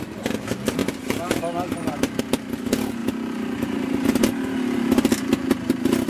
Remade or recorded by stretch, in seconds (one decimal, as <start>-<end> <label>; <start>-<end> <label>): 0.0-3.0 recorded; 3.0-4.2 remade; 4.2-6.1 recorded